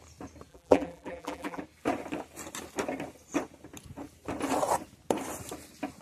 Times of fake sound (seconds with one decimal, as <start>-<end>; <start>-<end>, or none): 0.5-1.6